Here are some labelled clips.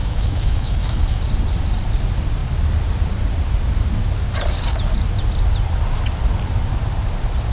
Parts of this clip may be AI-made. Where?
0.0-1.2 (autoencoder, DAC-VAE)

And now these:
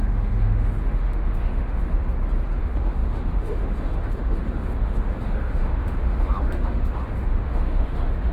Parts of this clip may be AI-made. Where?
0.0-1.8 (autoencoder, DAC-VAE); 2.6-8.3

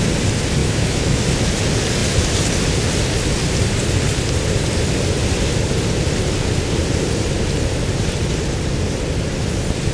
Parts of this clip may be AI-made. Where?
0.6-1.2 (autoencoder, DAC-VAE)

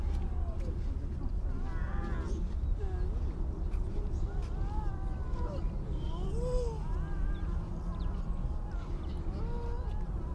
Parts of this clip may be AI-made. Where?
none

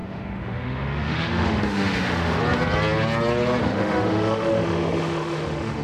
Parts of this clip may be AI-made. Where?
0.0-2.4 (autoencoder, DAC-VAE); 3.6-5.8

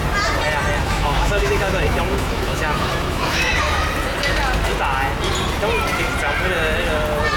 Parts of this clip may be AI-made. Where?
0.8-3.5 (autoencoder, DAC-VAE)

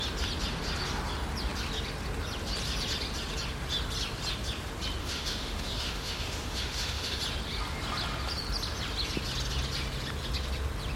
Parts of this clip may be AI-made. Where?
5.0-7.2 (autoencoder, DAC-VAE)

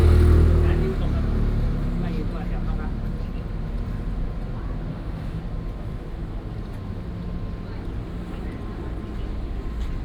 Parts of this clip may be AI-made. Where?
4.9-5.4 (autoencoder, DAC-VAE)